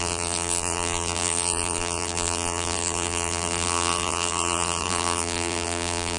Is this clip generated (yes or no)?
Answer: yes